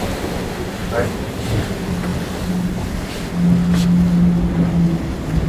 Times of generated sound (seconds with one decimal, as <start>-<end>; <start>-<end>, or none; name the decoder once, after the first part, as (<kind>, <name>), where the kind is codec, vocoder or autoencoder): none